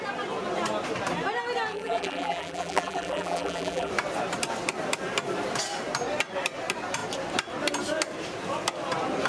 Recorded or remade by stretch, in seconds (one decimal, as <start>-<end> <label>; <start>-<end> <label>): 0.0-1.7 recorded; 1.7-3.9 remade; 3.9-9.3 recorded